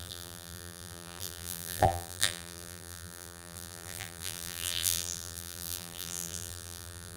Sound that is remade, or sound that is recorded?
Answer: remade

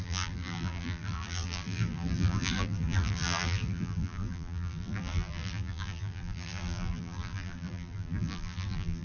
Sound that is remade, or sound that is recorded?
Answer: remade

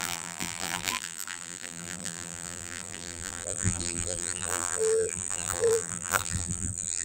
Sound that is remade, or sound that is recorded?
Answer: remade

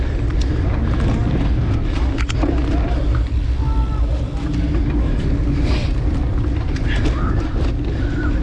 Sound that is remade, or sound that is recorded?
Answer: recorded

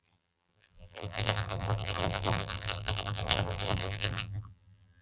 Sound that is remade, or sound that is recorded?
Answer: remade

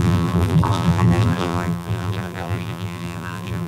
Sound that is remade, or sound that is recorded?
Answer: remade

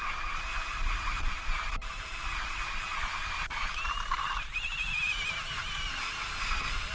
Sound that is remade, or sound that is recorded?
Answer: remade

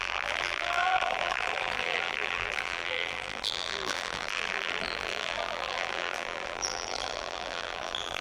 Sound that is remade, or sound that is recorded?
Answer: remade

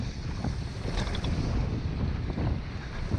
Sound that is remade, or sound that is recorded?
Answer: remade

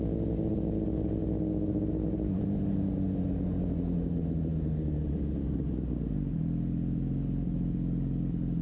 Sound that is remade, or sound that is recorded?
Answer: recorded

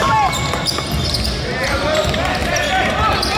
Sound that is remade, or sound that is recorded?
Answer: recorded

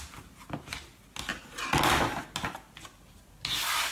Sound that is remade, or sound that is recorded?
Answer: recorded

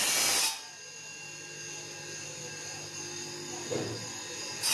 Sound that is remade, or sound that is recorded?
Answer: recorded